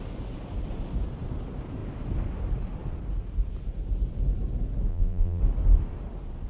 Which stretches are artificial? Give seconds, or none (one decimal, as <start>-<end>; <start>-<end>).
4.9-5.4